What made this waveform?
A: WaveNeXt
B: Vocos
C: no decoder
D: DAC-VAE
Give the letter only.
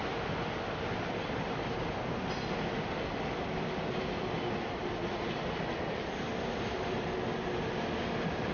C